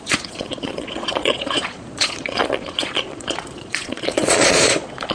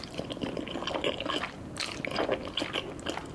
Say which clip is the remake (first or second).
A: first